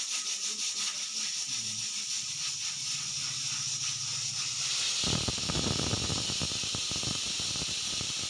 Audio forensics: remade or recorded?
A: recorded